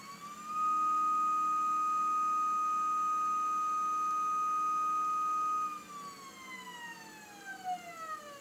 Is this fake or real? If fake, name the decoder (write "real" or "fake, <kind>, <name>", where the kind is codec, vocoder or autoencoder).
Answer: real